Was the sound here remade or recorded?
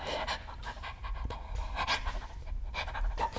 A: recorded